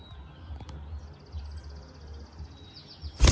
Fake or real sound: real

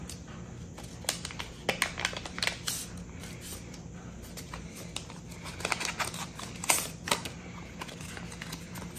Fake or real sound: real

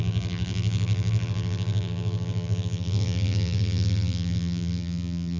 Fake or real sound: fake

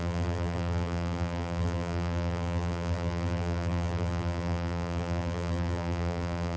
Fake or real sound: fake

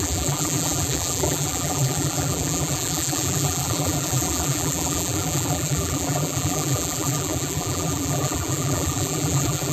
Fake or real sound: fake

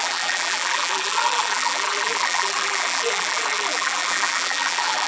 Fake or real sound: fake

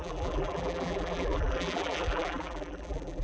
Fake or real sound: fake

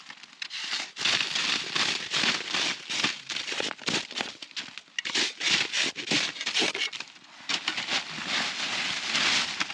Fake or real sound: real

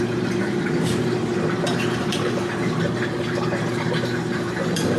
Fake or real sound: fake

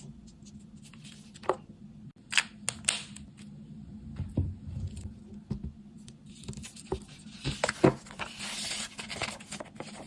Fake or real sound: real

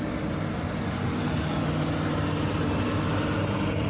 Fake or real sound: real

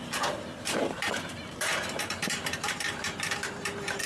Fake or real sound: fake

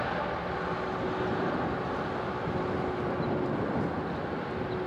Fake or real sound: real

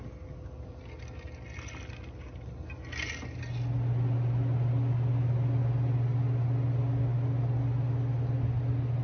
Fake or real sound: real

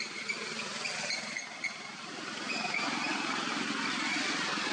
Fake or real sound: fake